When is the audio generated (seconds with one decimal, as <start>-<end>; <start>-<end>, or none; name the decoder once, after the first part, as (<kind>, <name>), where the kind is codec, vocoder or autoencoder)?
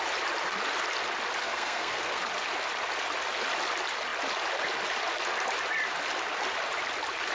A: 1.4-2.2 (codec, SNAC)